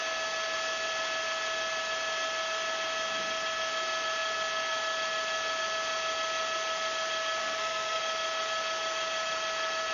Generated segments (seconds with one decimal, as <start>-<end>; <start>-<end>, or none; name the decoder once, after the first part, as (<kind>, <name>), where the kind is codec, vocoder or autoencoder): 7.4-8.0 (codec, SNAC)